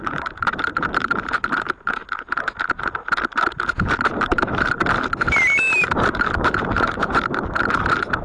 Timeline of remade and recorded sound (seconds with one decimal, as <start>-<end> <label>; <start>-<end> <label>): 0.0-2.0 remade; 2.0-3.9 recorded; 3.9-4.8 remade; 4.8-5.8 recorded; 5.8-8.2 remade